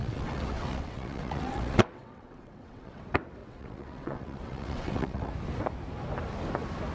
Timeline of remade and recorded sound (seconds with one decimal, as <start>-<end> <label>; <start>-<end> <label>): 0.0-3.0 remade; 3.0-3.4 recorded; 3.4-5.3 remade; 5.3-6.9 recorded